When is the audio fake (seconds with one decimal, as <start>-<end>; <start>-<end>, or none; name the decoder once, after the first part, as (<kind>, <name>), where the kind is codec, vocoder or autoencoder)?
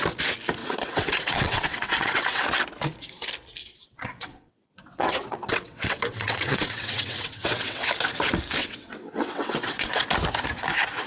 0.6-2.4 (vocoder, WaveNeXt); 3.6-7.9; 8.6-10.0